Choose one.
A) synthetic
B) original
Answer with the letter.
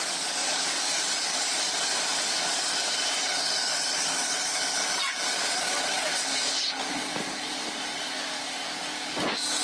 A